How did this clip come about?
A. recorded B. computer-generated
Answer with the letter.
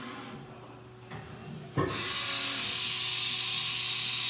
A